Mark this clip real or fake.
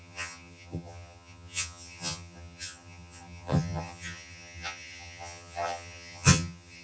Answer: fake